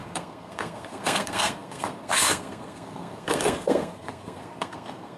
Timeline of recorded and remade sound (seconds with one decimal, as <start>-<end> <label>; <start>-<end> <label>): 0.0-5.2 remade